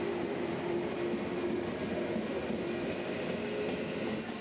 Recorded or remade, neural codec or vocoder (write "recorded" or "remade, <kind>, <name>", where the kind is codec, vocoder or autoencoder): recorded